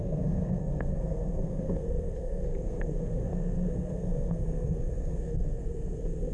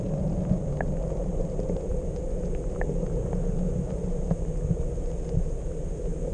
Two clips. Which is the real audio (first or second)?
second